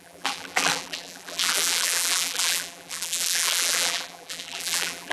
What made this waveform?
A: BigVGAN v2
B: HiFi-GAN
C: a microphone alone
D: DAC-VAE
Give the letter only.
A